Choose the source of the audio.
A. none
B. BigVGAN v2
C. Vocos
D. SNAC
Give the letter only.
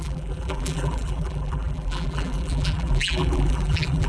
B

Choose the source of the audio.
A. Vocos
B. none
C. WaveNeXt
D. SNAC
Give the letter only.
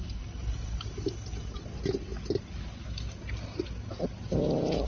B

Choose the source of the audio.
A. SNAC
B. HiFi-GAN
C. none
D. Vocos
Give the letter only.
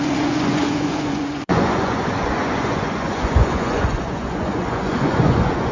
D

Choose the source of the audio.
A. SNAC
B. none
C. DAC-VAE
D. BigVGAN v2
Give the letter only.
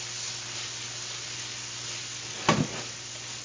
B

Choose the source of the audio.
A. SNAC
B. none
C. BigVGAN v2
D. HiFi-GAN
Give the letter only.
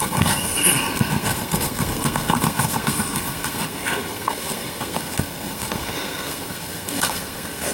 A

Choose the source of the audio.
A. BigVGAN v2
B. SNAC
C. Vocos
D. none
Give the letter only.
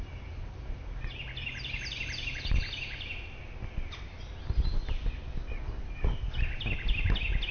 D